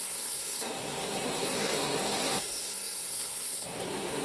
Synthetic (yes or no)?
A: yes